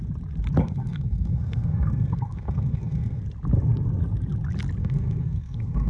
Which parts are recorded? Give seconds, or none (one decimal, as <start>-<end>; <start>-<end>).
0.0-0.6; 3.2-4.8